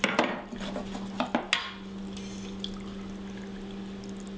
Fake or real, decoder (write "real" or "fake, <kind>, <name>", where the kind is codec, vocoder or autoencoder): real